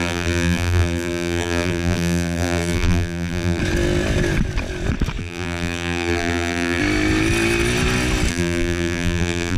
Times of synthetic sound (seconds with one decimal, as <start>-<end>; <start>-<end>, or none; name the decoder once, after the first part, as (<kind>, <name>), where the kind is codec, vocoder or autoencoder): 0.0-3.6 (vocoder, BigVGAN v2); 5.2-6.8; 8.3-9.6